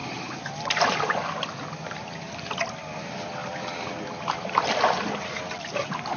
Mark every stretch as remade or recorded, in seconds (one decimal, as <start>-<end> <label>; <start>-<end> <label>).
0.0-6.2 recorded

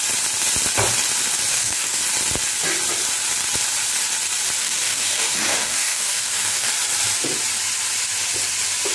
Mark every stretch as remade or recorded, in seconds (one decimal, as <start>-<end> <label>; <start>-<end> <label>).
0.0-1.5 recorded; 1.5-2.0 remade; 2.0-4.6 recorded; 4.6-6.7 remade; 6.7-8.9 recorded

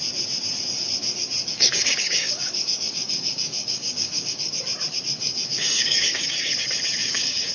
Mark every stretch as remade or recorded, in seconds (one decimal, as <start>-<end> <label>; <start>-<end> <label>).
0.0-1.4 recorded; 1.4-4.6 remade; 4.6-5.2 recorded; 5.2-6.6 remade; 6.6-7.0 recorded; 7.0-7.5 remade

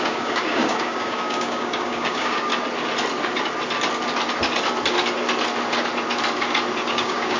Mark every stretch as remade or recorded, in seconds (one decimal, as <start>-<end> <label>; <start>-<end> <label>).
0.0-2.5 remade; 2.5-6.9 recorded; 6.9-7.4 remade

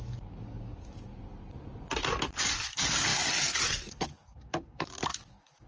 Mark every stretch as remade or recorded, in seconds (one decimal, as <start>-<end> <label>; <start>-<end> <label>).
0.0-1.1 remade; 1.1-2.4 recorded; 2.4-5.7 remade

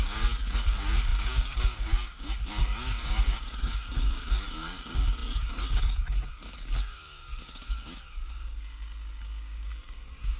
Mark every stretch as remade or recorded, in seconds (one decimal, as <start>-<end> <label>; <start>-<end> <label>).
0.0-10.4 remade